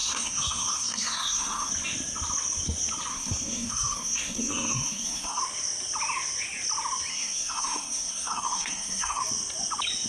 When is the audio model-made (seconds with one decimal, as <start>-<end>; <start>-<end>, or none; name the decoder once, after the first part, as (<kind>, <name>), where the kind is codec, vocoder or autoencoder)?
0.0-1.7 (codec, SNAC); 3.1-5.4; 7.1-9.2